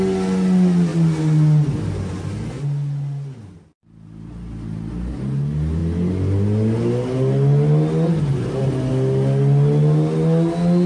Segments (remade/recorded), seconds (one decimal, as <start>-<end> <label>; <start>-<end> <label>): 0.0-10.9 recorded